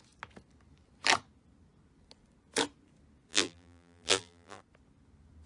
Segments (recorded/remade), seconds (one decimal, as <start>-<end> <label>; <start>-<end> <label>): 0.0-3.3 recorded; 3.3-4.6 remade; 4.6-5.5 recorded